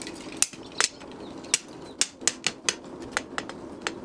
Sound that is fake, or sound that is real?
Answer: real